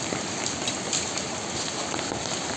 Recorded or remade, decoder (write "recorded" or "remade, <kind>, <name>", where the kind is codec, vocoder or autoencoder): recorded